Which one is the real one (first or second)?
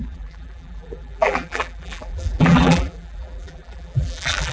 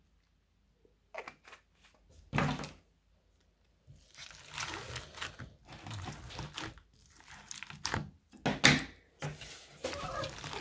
second